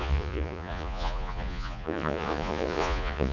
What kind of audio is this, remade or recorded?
remade